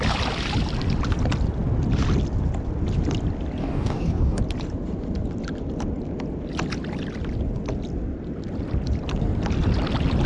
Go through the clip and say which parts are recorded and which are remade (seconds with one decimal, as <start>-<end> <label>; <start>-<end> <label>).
0.0-3.6 recorded; 3.6-4.4 remade; 4.4-10.3 recorded